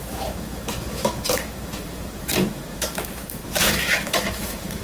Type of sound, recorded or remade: remade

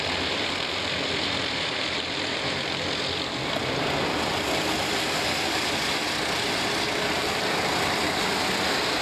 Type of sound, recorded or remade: remade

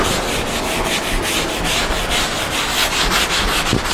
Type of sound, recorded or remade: recorded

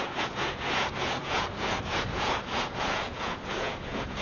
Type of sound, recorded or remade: remade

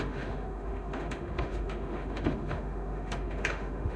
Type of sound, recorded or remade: remade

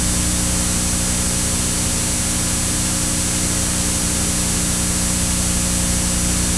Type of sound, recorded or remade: recorded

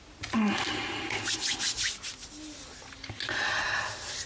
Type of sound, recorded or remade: recorded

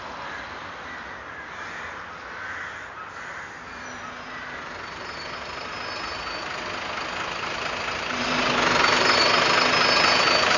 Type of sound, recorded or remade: recorded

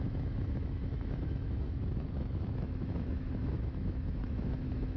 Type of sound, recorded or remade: remade